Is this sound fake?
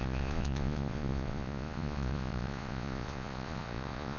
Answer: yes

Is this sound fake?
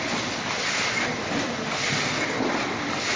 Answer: no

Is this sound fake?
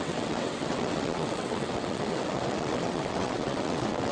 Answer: yes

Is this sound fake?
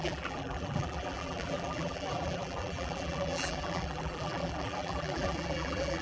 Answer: yes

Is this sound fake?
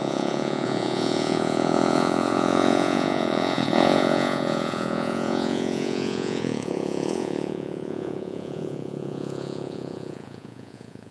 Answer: yes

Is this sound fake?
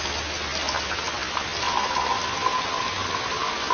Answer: no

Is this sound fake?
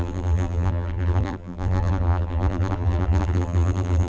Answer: yes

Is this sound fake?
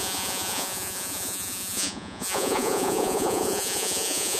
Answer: yes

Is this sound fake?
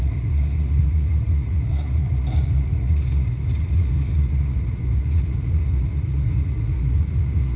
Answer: yes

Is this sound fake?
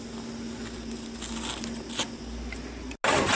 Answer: no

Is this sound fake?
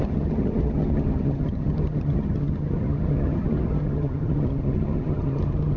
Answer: yes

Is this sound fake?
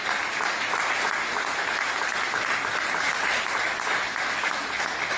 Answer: no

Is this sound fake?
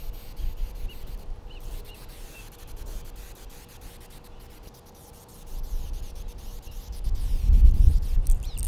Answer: no